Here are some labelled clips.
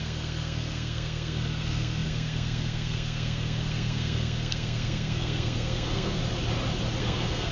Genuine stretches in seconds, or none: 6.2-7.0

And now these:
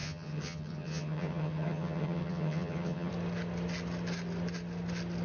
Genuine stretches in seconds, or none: 3.1-5.2

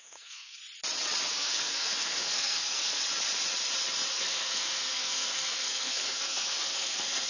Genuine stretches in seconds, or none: 0.6-1.3; 3.0-4.1